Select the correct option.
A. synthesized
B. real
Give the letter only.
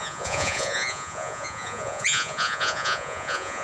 A